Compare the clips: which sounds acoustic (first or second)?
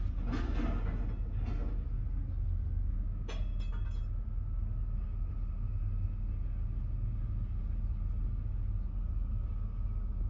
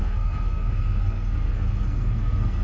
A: first